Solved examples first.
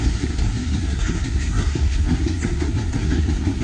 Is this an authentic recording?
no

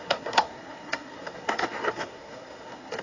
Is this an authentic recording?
no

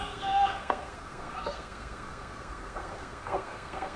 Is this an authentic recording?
no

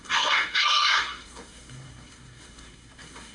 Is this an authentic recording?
no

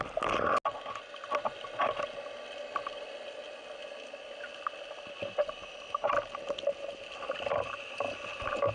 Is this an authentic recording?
yes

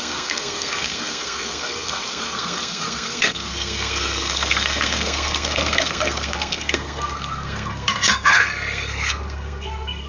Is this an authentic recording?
no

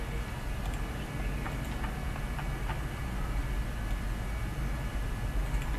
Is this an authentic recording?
yes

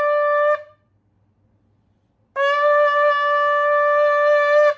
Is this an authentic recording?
yes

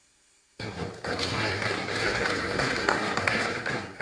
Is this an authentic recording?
no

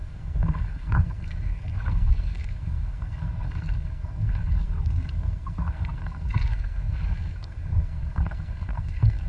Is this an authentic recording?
no